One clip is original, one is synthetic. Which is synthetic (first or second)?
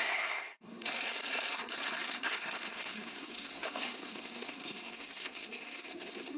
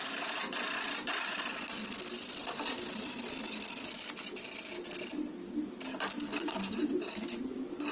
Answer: first